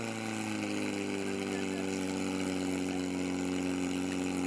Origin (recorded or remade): recorded